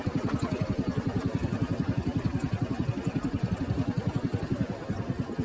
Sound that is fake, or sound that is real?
real